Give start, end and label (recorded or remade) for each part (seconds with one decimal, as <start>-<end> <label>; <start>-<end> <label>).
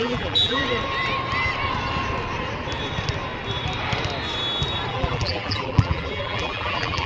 0.0-0.6 remade; 0.6-4.9 recorded; 4.9-7.1 remade